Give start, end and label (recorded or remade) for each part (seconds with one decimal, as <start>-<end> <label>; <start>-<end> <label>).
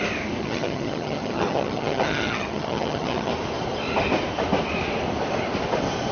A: 0.0-0.4 recorded; 0.4-3.3 remade; 3.3-6.1 recorded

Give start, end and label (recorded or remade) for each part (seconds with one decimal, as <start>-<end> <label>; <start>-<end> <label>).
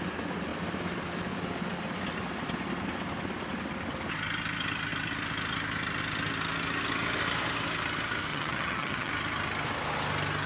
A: 0.0-8.3 recorded; 8.3-9.1 remade; 9.1-10.5 recorded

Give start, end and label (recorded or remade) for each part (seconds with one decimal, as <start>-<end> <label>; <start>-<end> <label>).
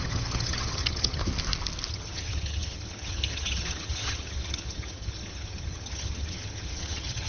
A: 0.0-1.2 remade; 1.2-1.9 recorded; 1.9-7.3 remade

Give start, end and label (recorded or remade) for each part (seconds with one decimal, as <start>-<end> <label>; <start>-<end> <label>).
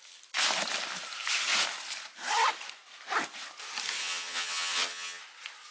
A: 0.0-4.0 recorded; 4.0-5.2 remade; 5.2-5.7 recorded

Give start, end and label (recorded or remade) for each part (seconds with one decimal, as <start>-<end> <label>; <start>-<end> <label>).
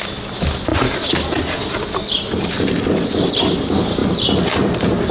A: 0.0-5.1 recorded